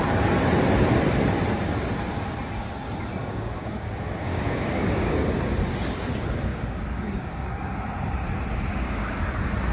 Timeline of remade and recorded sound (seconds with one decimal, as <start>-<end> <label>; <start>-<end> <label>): 0.0-3.2 recorded; 3.2-5.4 remade; 5.4-6.5 recorded; 6.5-7.8 remade; 7.8-8.7 recorded; 8.7-9.2 remade; 9.2-9.7 recorded